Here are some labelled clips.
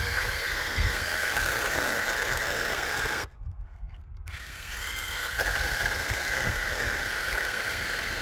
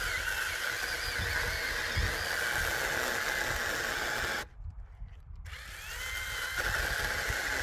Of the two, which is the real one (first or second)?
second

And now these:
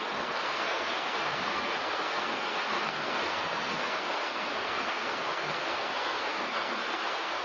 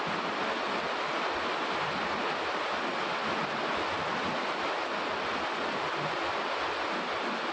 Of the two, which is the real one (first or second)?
second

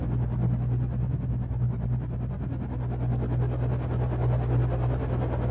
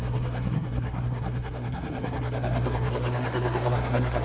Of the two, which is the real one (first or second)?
first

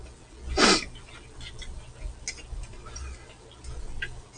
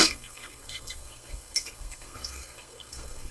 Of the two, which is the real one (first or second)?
first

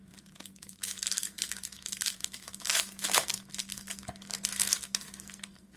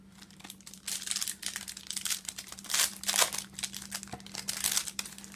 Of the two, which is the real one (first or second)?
second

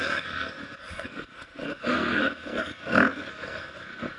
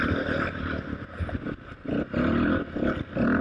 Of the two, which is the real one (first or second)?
second